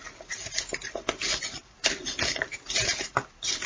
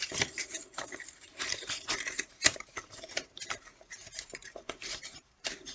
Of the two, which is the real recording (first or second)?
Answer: first